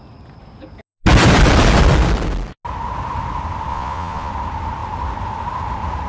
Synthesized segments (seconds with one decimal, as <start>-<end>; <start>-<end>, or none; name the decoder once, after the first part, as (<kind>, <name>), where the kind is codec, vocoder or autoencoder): 3.7-4.3 (vocoder, Vocos)